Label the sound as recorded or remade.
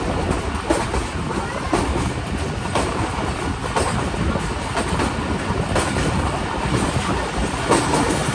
recorded